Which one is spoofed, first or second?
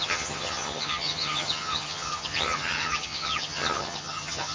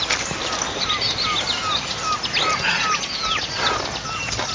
first